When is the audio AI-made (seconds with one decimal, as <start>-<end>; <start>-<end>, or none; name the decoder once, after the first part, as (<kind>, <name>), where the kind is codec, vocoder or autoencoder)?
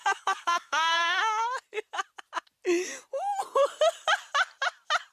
0.0-1.2 (codec, SNAC)